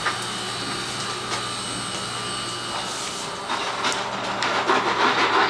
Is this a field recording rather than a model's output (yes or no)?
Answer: yes